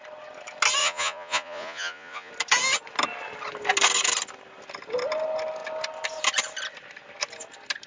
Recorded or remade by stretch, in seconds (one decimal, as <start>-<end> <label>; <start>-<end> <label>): 0.0-0.8 recorded; 0.8-2.3 remade; 2.3-7.9 recorded